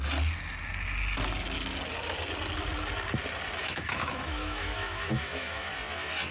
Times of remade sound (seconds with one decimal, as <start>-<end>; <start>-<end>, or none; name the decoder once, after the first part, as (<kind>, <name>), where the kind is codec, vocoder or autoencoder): 3.6-5.7 (autoencoder, DAC-VAE)